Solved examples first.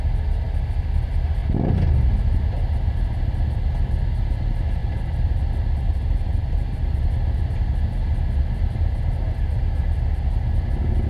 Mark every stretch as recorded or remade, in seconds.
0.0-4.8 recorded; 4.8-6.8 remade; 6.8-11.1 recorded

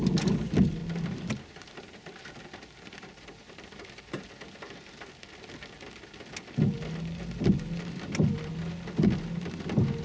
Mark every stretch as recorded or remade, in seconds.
0.0-0.8 recorded; 0.8-4.0 remade; 4.0-10.0 recorded